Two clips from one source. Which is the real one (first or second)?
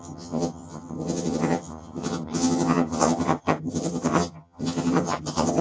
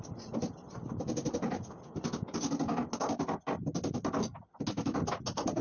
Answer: second